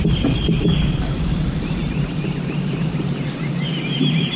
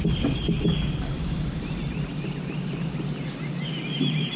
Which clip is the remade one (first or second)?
first